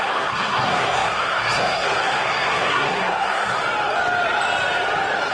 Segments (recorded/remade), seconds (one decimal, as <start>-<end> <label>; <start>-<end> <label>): 0.0-3.6 remade; 3.6-5.3 recorded